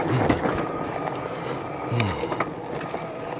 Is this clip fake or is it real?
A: real